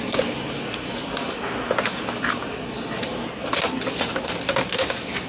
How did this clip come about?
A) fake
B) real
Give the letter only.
B